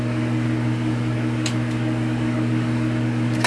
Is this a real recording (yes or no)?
no